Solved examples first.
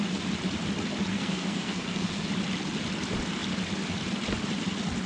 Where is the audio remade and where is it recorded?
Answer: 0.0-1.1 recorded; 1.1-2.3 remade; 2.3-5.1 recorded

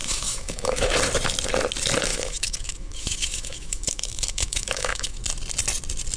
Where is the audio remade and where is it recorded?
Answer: 0.0-0.9 remade; 0.9-2.1 recorded; 2.1-5.2 remade; 5.2-6.2 recorded

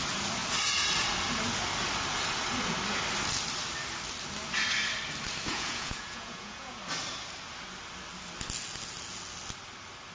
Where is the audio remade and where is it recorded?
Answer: 0.0-5.5 recorded; 5.5-6.8 remade; 6.8-10.1 recorded

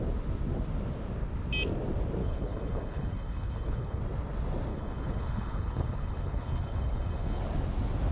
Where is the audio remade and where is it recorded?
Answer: 0.0-2.2 recorded; 2.2-4.0 remade; 4.0-4.7 recorded; 4.7-7.4 remade; 7.4-8.1 recorded

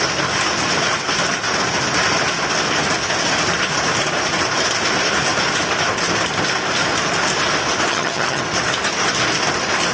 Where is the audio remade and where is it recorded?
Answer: 0.0-7.9 recorded; 7.9-8.4 remade; 8.4-9.9 recorded